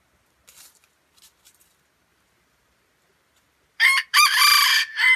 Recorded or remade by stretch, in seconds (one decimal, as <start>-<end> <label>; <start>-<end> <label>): 0.0-2.1 recorded; 2.1-4.4 remade; 4.4-5.2 recorded